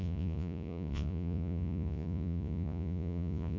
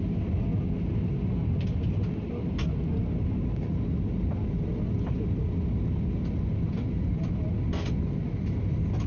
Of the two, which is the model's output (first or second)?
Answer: first